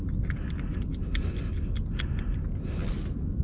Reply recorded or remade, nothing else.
recorded